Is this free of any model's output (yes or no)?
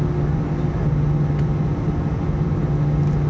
yes